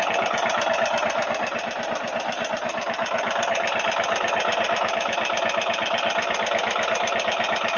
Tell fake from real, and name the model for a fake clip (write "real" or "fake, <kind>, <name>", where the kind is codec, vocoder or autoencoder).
real